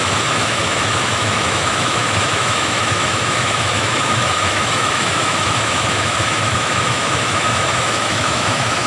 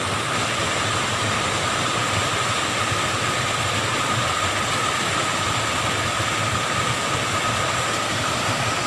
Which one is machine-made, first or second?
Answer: first